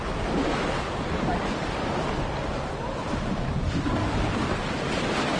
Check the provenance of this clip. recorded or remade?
recorded